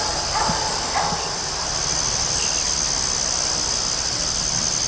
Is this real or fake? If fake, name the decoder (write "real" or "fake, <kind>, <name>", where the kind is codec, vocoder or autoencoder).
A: real